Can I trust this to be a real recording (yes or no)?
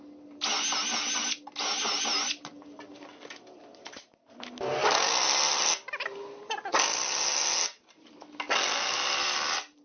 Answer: yes